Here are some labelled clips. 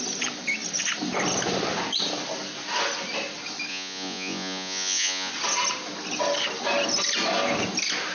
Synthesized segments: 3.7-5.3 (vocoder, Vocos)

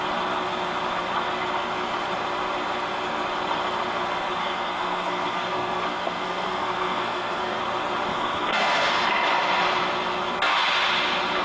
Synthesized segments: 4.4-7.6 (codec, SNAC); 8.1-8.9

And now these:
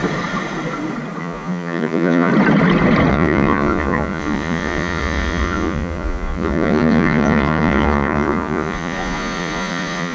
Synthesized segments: 1.2-2.3 (vocoder, Vocos); 3.1-10.1